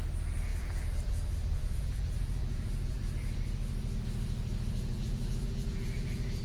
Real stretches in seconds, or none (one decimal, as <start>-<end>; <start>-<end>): 0.0-0.5; 3.0-4.9